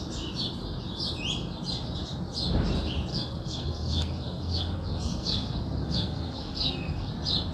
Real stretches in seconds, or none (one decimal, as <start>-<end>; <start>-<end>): 0.0-3.1; 7.1-7.5